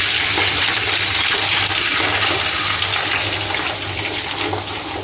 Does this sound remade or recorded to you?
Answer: recorded